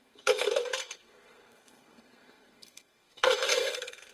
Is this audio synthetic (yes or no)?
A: yes